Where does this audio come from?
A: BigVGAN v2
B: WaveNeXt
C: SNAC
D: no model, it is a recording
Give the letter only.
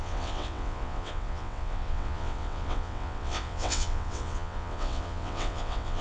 B